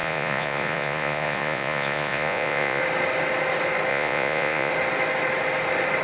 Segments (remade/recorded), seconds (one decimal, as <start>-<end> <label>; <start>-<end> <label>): 0.0-2.8 remade; 2.8-3.9 recorded; 3.9-4.7 remade; 4.7-6.0 recorded